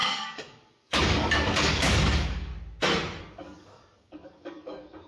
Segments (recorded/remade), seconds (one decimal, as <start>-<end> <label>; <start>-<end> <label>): 0.0-2.5 remade; 2.5-3.2 recorded; 3.2-5.1 remade

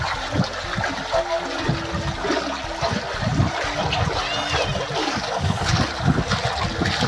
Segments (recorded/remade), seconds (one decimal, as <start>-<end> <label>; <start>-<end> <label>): 0.0-5.0 recorded; 5.0-5.8 remade; 5.8-7.1 recorded

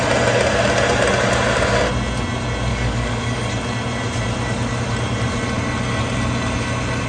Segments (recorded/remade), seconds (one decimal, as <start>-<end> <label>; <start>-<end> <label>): 0.0-2.7 recorded; 2.7-3.5 remade; 3.5-7.1 recorded

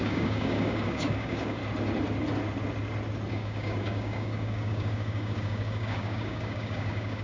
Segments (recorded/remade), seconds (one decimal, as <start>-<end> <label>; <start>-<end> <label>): 0.0-1.6 remade; 1.6-3.3 recorded; 3.3-7.2 remade

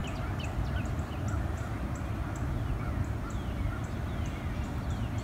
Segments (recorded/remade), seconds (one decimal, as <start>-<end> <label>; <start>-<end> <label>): 0.0-5.2 recorded

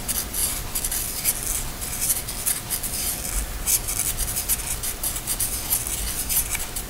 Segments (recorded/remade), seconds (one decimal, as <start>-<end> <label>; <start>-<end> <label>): 0.0-6.9 recorded

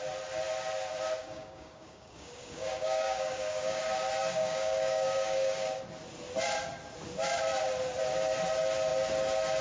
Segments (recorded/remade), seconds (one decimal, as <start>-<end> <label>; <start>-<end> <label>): 0.0-1.2 recorded; 1.2-3.8 remade; 3.8-4.3 recorded; 4.3-5.8 remade; 5.8-9.6 recorded